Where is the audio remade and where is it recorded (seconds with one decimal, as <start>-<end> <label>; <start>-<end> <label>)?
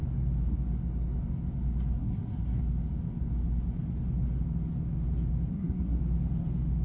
0.0-2.0 recorded; 2.0-2.6 remade; 2.6-5.5 recorded; 5.5-6.0 remade; 6.0-6.8 recorded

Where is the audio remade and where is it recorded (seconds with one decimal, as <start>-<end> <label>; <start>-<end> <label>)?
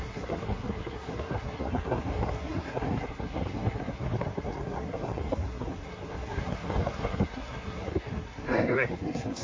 0.0-9.4 remade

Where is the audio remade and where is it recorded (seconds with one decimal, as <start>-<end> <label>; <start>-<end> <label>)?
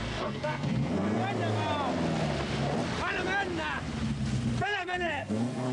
0.0-1.2 remade; 1.2-4.6 recorded; 4.6-5.7 remade